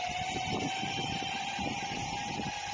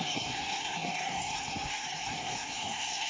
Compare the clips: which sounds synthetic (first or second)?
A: second